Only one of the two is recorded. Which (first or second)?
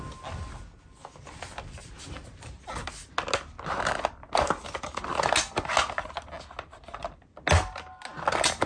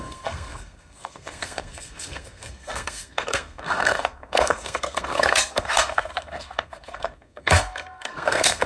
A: first